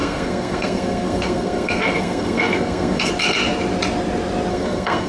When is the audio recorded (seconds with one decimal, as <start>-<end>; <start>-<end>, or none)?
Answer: 3.1-4.5